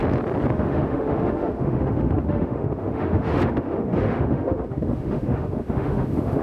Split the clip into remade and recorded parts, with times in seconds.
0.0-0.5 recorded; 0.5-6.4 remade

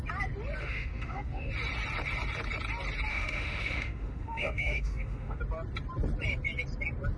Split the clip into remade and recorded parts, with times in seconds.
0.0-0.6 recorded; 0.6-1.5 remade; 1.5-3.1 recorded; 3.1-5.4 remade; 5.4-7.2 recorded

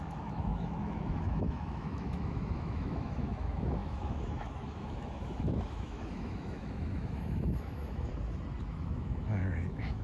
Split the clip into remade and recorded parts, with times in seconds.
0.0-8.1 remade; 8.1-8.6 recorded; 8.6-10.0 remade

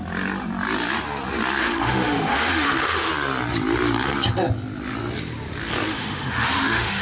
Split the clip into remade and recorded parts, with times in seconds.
0.0-1.6 recorded; 1.6-3.1 remade; 3.1-5.9 recorded; 5.9-7.0 remade

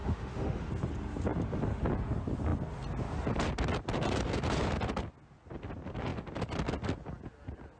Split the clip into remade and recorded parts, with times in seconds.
0.0-0.7 remade; 0.7-7.8 recorded

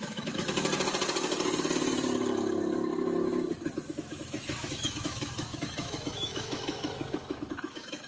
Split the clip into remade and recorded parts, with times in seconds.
0.0-0.7 remade; 0.7-3.9 recorded; 3.9-8.1 remade

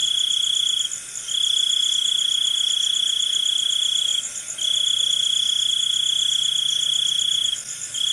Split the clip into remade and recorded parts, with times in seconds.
0.0-8.1 recorded

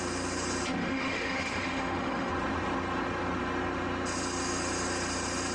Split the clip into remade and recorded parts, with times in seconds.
0.0-0.8 recorded; 0.8-2.3 remade; 2.3-5.5 recorded